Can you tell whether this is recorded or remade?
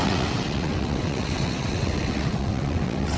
remade